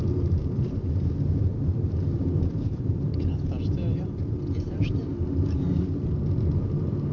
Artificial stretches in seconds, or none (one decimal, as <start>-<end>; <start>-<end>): 0.4-3.1; 3.9-5.8